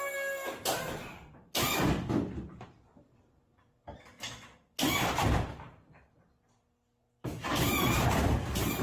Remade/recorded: recorded